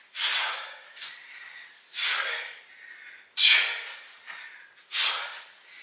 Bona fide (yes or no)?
yes